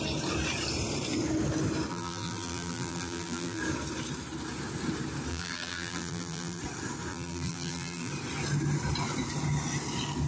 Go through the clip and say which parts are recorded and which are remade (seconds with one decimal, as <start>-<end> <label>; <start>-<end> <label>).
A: 0.0-1.9 recorded; 1.9-3.6 remade; 3.6-5.3 recorded; 5.3-6.6 remade; 6.6-7.1 recorded; 7.1-8.1 remade; 8.1-10.3 recorded